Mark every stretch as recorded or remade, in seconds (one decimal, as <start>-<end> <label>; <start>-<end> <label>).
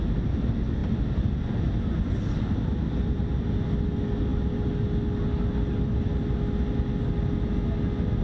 0.0-8.2 recorded